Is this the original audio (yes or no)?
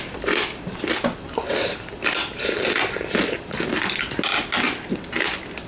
yes